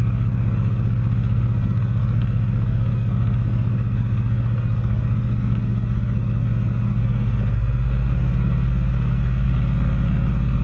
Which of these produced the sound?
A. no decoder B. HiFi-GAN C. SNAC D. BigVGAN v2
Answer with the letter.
C